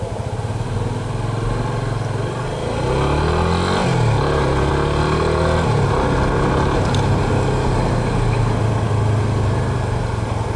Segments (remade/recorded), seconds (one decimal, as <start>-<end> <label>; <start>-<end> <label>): 0.0-10.6 recorded